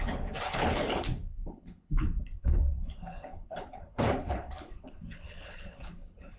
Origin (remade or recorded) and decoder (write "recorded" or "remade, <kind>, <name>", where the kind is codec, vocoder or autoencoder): remade, codec, HILCodec